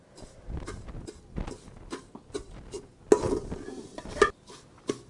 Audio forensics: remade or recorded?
recorded